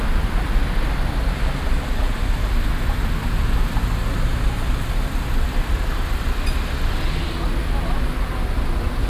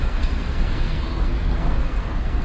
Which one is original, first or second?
first